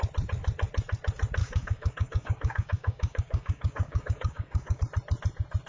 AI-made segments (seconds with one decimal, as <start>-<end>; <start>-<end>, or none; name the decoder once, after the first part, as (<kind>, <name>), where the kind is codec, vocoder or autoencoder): 1.4-4.8 (codec, DAC)